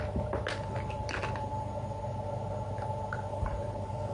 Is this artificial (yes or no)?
no